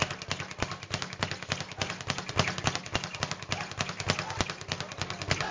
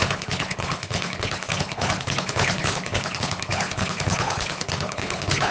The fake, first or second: second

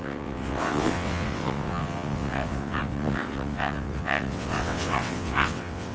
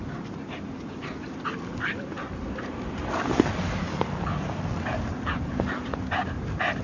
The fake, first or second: first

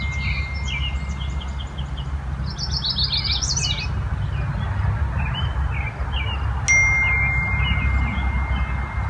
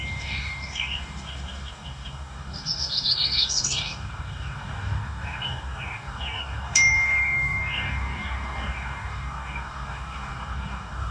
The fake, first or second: second